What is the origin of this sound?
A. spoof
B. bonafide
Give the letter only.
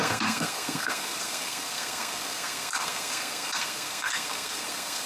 A